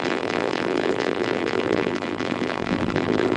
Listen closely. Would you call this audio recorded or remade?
remade